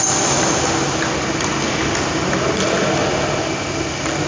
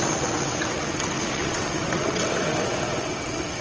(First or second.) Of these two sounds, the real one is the first